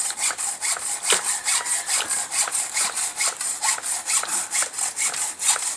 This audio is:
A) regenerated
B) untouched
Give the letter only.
B